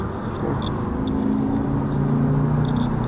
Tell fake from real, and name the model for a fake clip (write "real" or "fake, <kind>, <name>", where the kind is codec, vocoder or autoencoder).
real